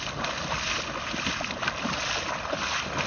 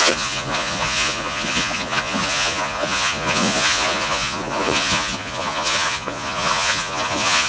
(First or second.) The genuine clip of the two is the first